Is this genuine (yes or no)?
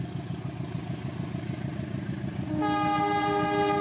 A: yes